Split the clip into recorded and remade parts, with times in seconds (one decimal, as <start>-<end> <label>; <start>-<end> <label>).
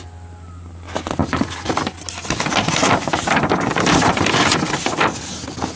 0.0-5.8 recorded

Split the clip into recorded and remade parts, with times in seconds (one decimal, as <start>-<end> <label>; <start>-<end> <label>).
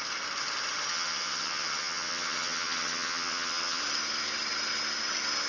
0.0-0.9 recorded; 0.9-3.8 remade; 3.8-5.5 recorded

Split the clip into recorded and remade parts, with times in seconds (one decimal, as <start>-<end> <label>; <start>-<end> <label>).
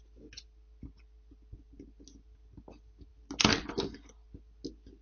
0.0-5.0 recorded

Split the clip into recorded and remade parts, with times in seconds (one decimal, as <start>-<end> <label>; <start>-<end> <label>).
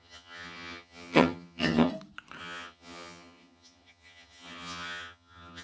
0.0-1.9 remade; 1.9-2.4 recorded; 2.4-5.6 remade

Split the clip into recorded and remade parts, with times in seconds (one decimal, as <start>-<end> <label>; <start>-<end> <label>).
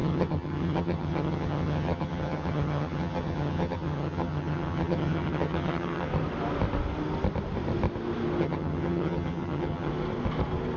0.0-6.1 remade; 6.1-8.4 recorded; 8.4-9.9 remade; 9.9-10.8 recorded